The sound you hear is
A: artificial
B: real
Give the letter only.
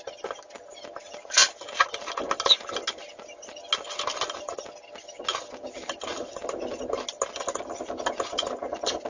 B